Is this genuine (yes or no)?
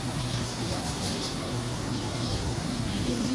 no